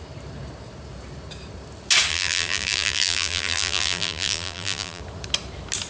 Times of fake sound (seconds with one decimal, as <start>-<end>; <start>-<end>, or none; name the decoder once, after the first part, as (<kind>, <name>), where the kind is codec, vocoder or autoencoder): 2.1-5.0 (vocoder, BigVGAN v2)